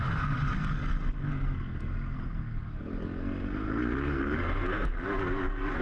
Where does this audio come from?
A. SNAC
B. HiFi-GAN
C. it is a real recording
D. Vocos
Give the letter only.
A